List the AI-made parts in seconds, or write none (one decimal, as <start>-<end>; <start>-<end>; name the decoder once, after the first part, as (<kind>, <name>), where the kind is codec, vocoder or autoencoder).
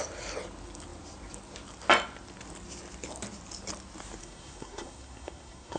4.2-5.8 (codec, SNAC)